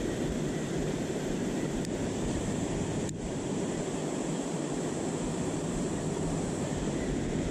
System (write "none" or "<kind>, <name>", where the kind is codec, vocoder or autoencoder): vocoder, BigVGAN v2